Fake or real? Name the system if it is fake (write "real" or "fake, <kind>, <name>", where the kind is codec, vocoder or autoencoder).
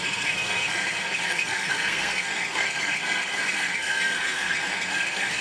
fake, codec, SNAC